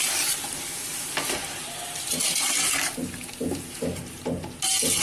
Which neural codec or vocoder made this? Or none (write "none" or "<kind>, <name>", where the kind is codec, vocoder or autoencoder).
none